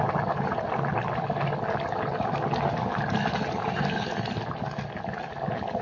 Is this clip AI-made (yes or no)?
no